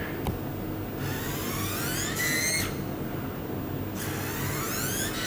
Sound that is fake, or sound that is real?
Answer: real